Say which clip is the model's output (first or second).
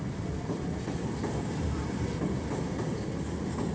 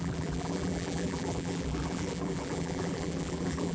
second